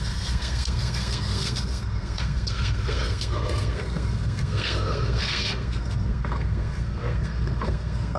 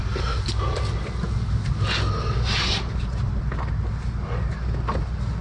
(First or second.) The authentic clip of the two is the second